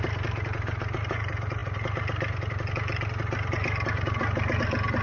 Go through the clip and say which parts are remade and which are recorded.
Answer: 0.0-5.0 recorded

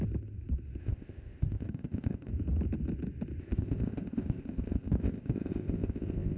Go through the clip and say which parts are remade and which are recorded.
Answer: 0.0-0.8 recorded; 0.8-2.3 remade; 2.3-3.4 recorded; 3.4-6.4 remade